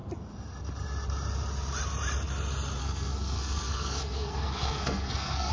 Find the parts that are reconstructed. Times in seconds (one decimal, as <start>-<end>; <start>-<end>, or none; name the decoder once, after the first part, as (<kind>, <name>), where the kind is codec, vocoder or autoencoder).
2.8-5.5 (codec, SNAC)